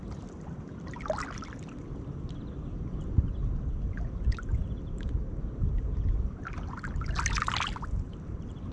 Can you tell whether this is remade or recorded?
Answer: recorded